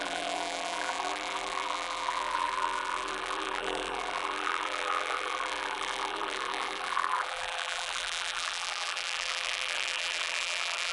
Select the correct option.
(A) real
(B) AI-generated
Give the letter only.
B